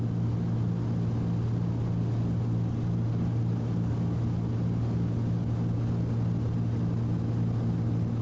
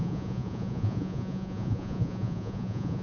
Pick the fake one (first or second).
second